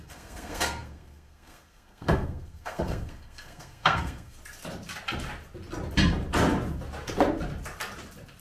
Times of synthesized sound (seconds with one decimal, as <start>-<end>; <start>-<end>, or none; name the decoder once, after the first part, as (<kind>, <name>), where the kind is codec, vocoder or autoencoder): 0.0-4.4 (codec, SNAC)